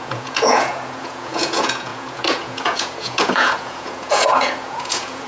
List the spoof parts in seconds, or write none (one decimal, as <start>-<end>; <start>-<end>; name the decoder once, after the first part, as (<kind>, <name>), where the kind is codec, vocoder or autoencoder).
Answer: 0.0-5.3 (vocoder, Vocos)